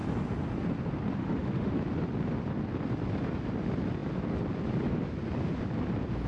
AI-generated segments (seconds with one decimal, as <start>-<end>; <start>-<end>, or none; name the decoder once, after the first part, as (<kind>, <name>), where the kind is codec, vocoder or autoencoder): 1.2-1.7 (autoencoder, DAC-VAE)

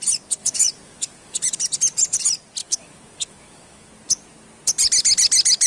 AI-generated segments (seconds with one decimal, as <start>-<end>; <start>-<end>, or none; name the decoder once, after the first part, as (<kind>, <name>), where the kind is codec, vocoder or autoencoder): 0.4-1.4 (autoencoder, DAC-VAE); 2.6-3.9

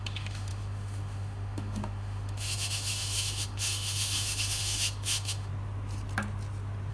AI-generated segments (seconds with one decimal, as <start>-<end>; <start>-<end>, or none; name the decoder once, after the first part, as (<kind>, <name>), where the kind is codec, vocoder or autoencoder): 0.0-5.5 (autoencoder, DAC-VAE)

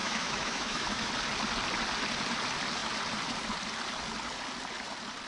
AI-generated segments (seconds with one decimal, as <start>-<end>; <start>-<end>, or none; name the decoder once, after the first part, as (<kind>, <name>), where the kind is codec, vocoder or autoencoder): 0.0-1.1 (autoencoder, DAC-VAE)

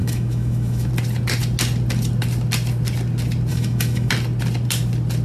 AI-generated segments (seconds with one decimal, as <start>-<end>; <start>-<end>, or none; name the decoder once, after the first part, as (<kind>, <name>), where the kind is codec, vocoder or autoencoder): 0.0-0.9 (autoencoder, DAC-VAE); 3.5-4.1

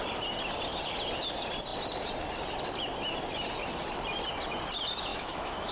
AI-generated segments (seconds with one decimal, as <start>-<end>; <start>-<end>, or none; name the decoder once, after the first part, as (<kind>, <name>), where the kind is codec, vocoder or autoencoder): 5.1-5.7 (autoencoder, DAC-VAE)

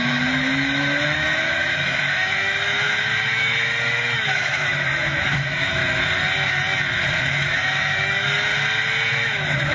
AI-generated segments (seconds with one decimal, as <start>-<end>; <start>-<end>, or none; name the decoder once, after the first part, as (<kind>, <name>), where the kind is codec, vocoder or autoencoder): 0.0-5.8 (autoencoder, DAC-VAE); 7.2-8.5; 9.1-9.7